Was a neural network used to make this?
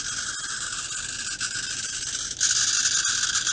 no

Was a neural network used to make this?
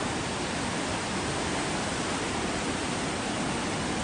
no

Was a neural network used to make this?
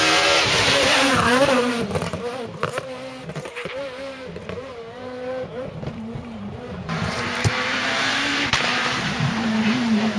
yes